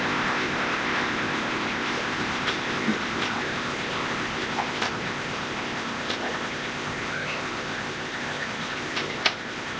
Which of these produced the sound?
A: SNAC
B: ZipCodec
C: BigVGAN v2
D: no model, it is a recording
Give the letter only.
B